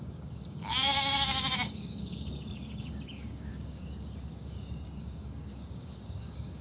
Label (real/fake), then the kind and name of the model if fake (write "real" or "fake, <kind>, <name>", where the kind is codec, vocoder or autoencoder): fake, codec, DAC